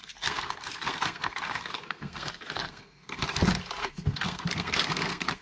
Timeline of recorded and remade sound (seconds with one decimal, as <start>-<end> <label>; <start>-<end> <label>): 0.0-3.2 remade; 3.2-3.8 recorded; 3.8-5.4 remade